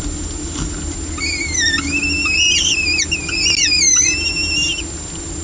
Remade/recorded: recorded